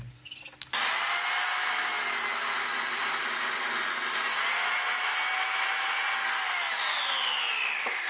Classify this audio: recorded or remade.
recorded